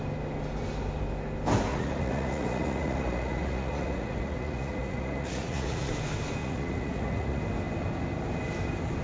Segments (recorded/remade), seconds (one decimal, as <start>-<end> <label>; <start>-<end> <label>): 0.0-1.7 recorded; 1.7-5.9 remade; 5.9-6.4 recorded; 6.4-7.4 remade; 7.4-9.0 recorded